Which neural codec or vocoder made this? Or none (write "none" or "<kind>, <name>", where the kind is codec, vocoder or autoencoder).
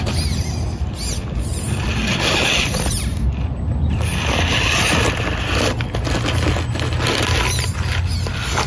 none